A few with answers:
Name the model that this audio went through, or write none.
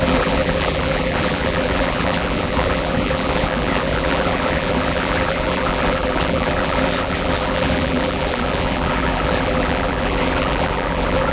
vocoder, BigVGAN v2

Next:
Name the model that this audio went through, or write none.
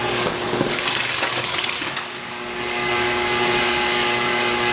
codec, DAC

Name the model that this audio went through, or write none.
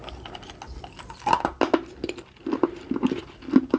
none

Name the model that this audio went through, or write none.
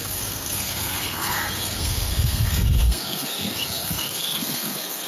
codec, SNAC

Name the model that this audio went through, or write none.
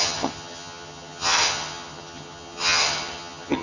vocoder, HiFi-GAN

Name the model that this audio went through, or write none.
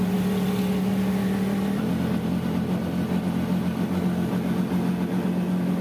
none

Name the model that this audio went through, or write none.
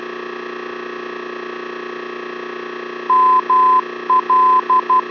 none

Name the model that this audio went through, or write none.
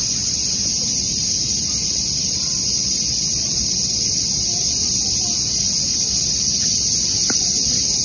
vocoder, BigVGAN v2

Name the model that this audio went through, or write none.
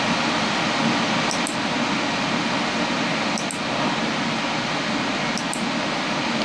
none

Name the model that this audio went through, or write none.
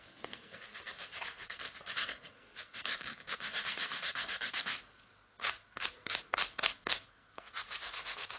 codec, SNAC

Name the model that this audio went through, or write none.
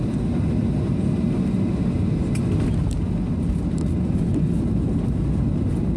none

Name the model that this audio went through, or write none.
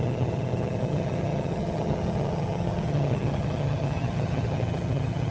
vocoder, HiFi-GAN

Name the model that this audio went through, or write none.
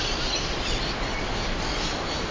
none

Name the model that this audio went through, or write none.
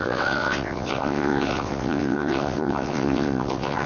vocoder, WaveNeXt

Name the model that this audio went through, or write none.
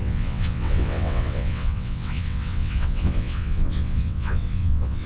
vocoder, WaveNeXt